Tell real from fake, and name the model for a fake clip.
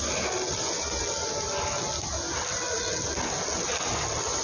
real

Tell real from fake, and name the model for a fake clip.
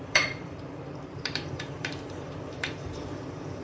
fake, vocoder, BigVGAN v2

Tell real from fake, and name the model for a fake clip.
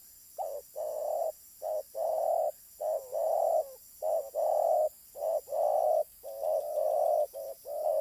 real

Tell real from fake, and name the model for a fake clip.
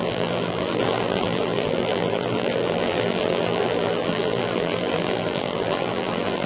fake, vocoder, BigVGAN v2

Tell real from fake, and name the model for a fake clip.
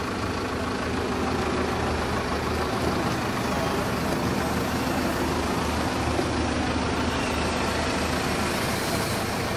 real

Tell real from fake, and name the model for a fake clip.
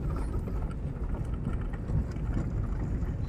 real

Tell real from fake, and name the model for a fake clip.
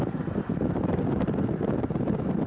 fake, vocoder, BigVGAN v2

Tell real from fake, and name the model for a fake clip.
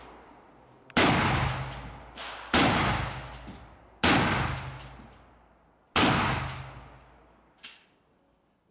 real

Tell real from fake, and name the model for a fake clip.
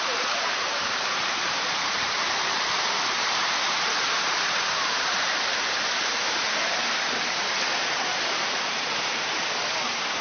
fake, vocoder, BigVGAN v2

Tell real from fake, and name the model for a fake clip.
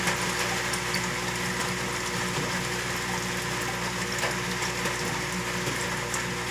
real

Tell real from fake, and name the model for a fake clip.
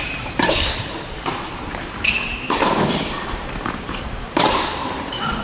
fake, vocoder, BigVGAN v2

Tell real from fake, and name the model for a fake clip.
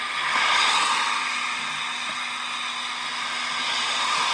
real